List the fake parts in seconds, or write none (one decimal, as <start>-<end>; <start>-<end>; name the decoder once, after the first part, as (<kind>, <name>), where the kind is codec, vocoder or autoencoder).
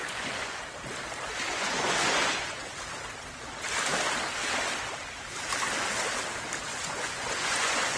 0.0-0.7 (vocoder, Vocos); 1.5-2.8; 6.7-8.0